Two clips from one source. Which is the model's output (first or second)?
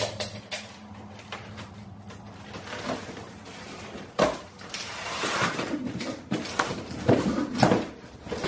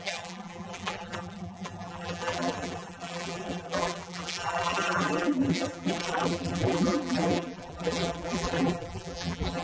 second